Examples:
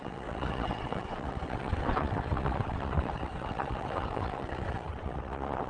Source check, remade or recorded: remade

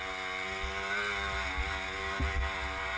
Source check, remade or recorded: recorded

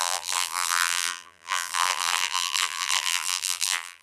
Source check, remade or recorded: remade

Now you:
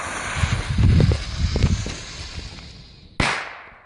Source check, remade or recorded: recorded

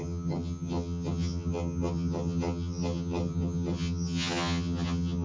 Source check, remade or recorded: remade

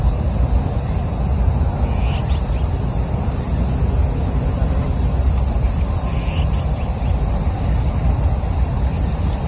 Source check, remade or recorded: recorded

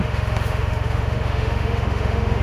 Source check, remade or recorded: remade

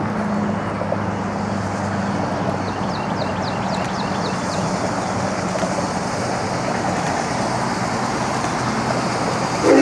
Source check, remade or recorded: recorded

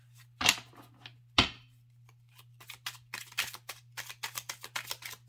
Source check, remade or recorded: recorded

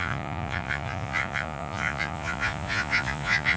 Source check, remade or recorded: remade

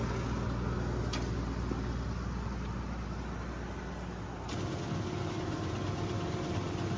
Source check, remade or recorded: recorded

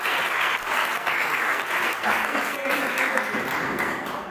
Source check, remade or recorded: remade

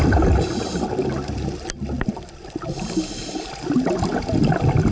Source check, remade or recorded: recorded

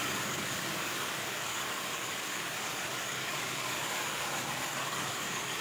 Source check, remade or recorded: remade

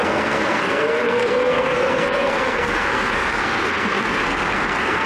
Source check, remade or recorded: remade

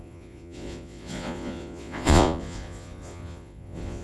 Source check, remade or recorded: remade